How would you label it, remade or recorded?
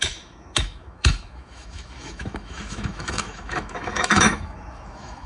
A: remade